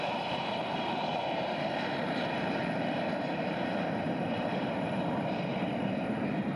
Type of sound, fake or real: fake